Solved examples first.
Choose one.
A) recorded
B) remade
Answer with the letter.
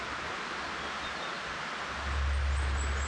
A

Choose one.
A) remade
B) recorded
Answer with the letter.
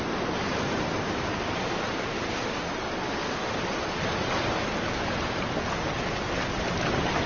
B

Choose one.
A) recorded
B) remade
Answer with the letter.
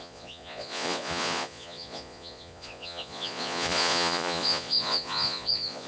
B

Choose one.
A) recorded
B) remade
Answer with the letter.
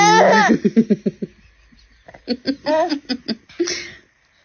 A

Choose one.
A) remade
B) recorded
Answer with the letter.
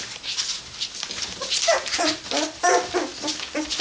B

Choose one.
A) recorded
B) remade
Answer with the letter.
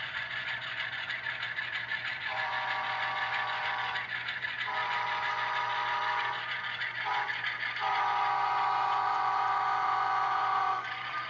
B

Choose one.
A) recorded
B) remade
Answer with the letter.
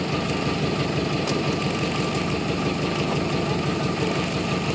A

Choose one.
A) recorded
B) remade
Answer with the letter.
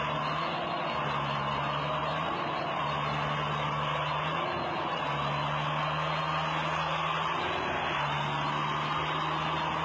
A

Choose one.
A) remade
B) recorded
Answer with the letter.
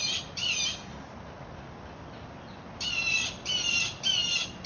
B